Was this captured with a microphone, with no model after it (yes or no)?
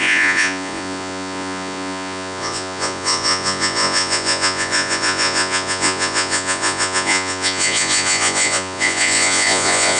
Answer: no